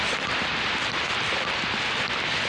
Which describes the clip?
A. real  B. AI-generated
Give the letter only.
A